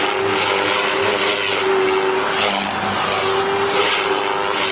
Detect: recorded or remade recorded